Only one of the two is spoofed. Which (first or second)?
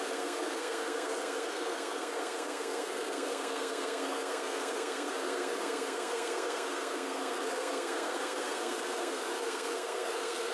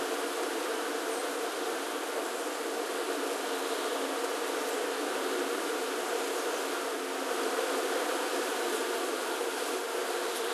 first